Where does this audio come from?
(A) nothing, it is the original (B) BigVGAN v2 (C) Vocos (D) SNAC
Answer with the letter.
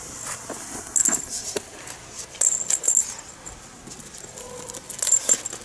A